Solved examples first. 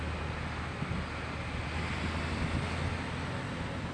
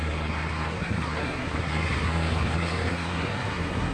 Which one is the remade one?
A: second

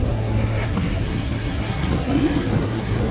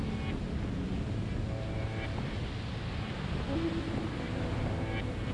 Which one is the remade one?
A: first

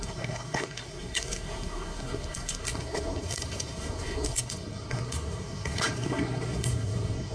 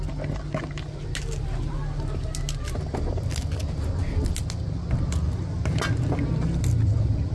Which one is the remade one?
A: first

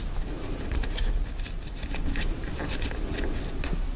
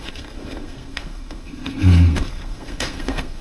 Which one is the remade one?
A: second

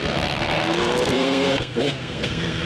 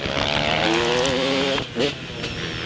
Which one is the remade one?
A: first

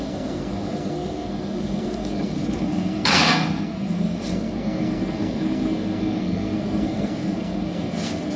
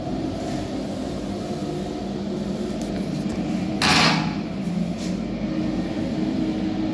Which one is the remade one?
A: first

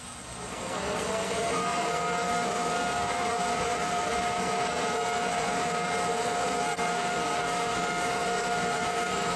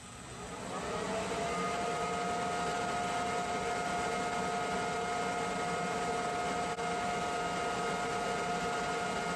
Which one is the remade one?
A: first